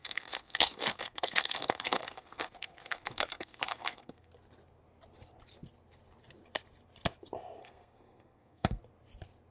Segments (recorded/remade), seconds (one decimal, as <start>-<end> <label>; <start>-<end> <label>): 0.0-4.3 remade; 4.3-7.6 recorded; 7.6-8.8 remade; 8.8-9.5 recorded